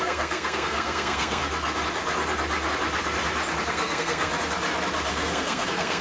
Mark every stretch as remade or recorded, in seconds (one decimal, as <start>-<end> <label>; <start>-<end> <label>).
0.0-1.4 remade; 1.4-3.7 recorded; 3.7-4.3 remade; 4.3-5.1 recorded; 5.1-6.0 remade